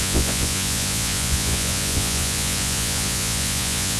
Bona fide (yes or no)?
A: no